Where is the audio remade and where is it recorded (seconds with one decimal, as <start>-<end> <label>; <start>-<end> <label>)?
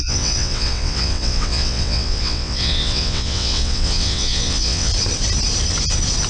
0.0-4.9 remade; 4.9-6.3 recorded